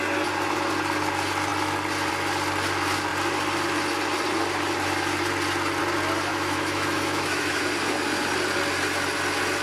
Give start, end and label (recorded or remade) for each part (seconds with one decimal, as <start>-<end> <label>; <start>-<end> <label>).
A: 0.0-6.3 recorded; 6.3-7.6 remade; 7.6-9.6 recorded